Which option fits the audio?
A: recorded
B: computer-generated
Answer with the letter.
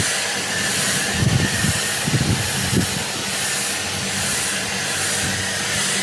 A